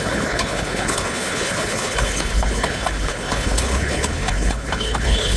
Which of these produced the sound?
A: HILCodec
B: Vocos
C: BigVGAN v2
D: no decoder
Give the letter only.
A